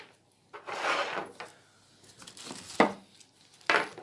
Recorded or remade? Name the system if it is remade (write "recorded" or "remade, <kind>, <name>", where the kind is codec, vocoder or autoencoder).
recorded